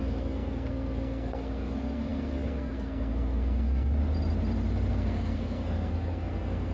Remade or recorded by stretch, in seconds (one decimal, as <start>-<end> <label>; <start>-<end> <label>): 0.0-3.9 remade; 3.9-4.9 recorded; 4.9-6.7 remade